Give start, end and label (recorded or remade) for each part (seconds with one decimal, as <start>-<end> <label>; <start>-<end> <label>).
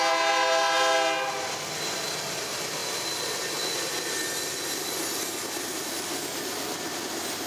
0.0-7.5 recorded